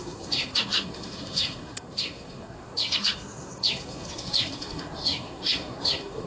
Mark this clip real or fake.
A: fake